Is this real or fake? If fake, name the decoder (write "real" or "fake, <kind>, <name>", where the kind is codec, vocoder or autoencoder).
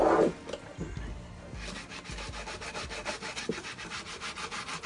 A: real